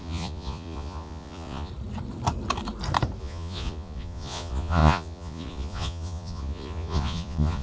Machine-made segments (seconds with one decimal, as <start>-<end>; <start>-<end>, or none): 0.0-1.7; 3.2-7.6